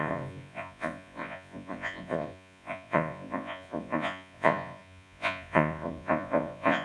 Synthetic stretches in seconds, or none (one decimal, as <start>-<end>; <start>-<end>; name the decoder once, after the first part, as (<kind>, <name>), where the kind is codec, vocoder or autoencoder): 0.0-6.8 (vocoder, Vocos)